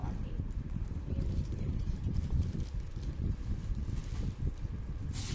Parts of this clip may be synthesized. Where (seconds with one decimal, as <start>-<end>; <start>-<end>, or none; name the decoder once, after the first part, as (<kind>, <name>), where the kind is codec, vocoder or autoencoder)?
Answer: 0.0-2.6 (vocoder, BigVGAN v2)